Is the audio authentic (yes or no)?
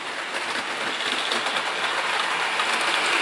yes